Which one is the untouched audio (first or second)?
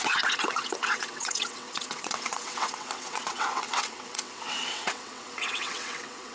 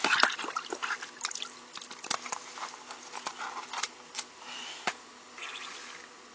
second